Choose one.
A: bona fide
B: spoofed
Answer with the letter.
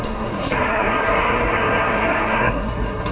B